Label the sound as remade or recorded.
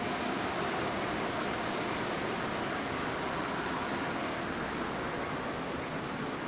recorded